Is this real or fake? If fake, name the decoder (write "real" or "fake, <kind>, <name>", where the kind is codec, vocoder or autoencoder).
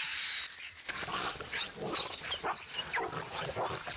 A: real